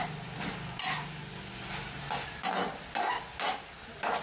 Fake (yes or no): no